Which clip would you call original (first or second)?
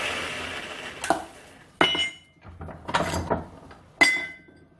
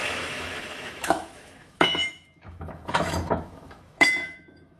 first